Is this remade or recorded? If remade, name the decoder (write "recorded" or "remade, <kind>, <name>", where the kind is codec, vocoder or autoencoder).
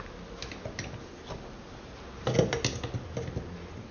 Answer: recorded